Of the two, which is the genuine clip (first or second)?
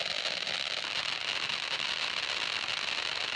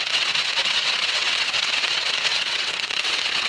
first